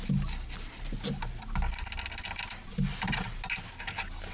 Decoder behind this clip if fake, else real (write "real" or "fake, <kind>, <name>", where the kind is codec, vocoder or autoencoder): real